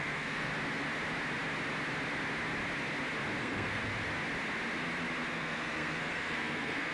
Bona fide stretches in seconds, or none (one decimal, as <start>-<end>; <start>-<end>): 0.5-3.4; 3.8-5.3